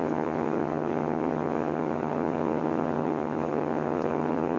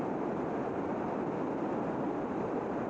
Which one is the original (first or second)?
second